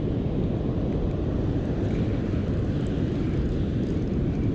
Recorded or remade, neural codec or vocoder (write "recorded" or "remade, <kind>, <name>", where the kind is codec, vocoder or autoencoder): recorded